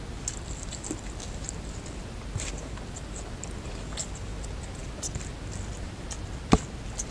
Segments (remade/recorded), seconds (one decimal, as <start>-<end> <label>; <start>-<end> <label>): 0.0-7.1 recorded